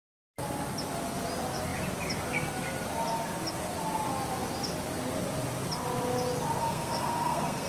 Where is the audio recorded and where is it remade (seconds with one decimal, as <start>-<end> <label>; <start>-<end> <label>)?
0.0-6.6 recorded; 6.6-7.7 remade